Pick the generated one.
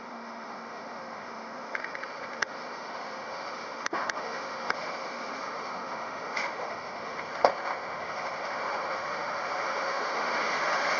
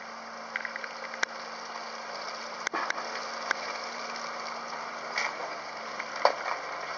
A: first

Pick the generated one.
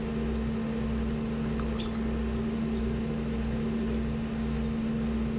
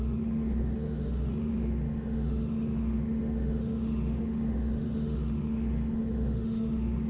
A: second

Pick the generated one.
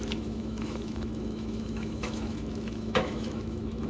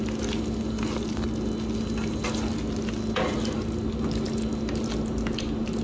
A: first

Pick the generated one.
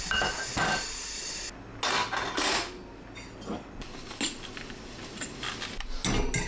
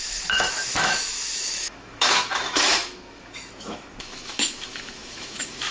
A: second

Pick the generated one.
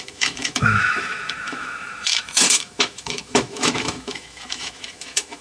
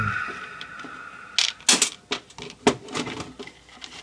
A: first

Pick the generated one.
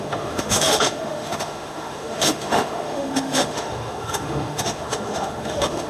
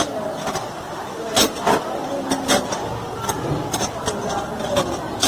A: first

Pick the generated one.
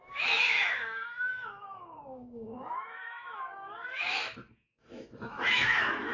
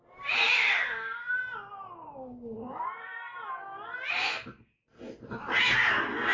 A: first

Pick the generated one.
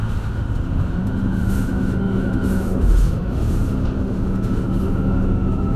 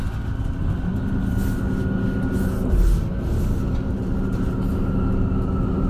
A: first